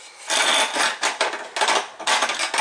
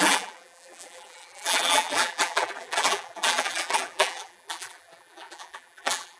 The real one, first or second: first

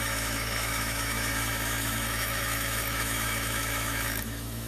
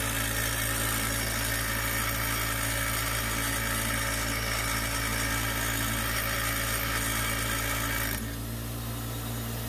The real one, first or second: second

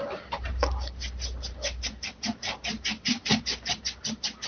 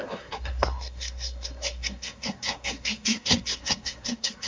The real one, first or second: first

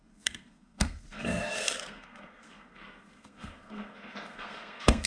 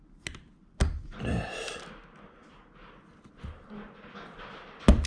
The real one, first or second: second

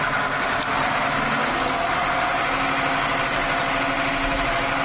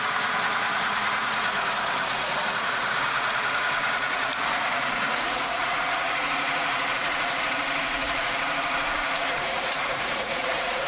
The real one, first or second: first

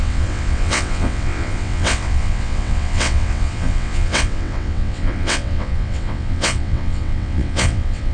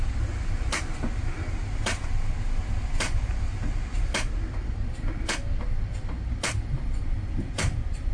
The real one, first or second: second